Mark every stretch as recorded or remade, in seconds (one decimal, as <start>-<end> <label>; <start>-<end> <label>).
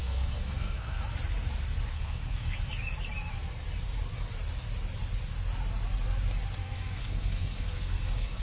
0.0-1.0 remade; 1.0-1.9 recorded; 1.9-2.7 remade; 2.7-6.6 recorded; 6.6-8.4 remade